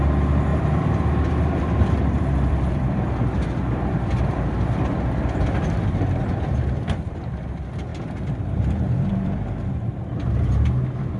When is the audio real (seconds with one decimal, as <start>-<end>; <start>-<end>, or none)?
none